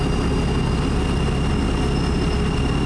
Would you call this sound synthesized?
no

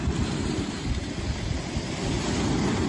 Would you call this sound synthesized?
no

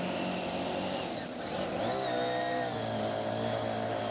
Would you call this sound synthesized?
no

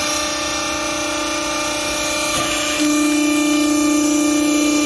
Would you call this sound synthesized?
no